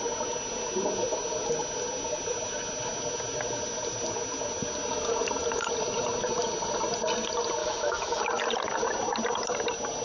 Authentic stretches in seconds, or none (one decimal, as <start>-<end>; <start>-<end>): 0.0-7.6; 8.2-10.0